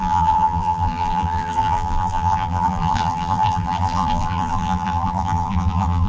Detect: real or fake fake